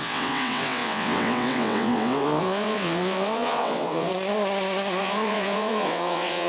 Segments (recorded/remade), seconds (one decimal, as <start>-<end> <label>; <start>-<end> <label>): 0.0-4.1 remade; 4.1-5.0 recorded; 5.0-6.5 remade